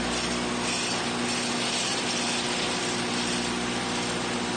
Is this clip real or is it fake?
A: real